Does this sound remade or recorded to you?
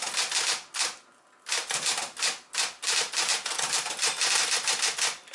recorded